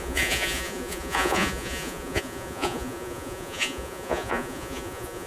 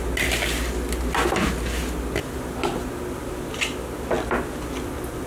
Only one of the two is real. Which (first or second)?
second